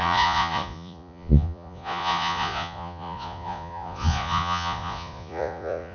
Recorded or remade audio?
remade